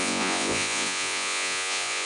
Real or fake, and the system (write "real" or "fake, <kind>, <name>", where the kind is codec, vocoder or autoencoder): fake, vocoder, Vocos